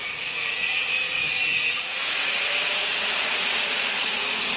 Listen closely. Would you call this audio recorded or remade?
remade